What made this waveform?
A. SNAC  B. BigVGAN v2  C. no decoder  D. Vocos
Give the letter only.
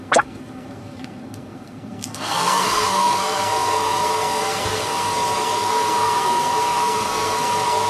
A